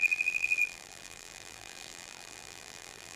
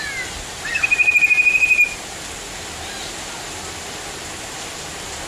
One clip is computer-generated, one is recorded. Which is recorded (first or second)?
second